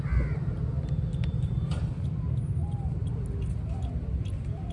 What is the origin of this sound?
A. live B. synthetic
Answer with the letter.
A